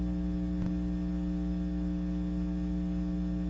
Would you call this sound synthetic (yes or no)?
no